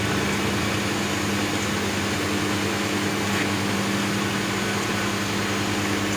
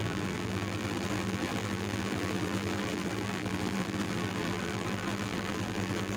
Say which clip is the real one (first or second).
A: first